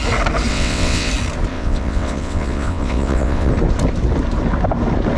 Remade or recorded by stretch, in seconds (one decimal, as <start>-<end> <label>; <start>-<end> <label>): 0.0-0.5 recorded; 0.5-1.1 remade; 1.1-1.5 recorded; 1.5-3.5 remade; 3.5-5.2 recorded